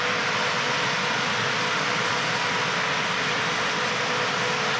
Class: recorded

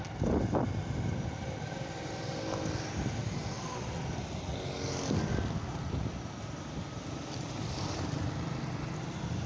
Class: recorded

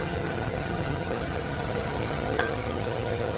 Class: remade